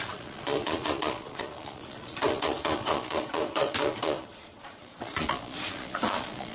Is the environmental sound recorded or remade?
remade